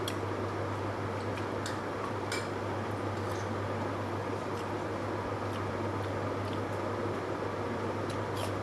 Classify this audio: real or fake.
real